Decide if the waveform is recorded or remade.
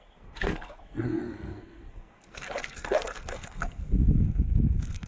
remade